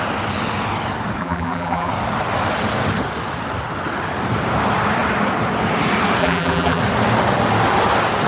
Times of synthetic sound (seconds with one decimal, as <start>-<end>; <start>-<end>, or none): 1.2-1.9; 6.2-6.8